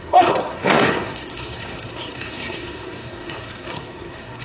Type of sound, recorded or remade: remade